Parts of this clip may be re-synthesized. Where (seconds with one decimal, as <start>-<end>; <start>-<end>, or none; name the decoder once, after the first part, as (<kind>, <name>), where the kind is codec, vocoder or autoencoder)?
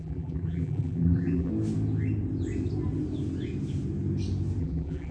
0.0-1.5 (vocoder, BigVGAN v2); 4.6-5.1